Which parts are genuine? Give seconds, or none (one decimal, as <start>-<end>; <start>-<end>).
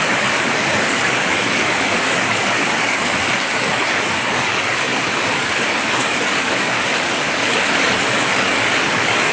none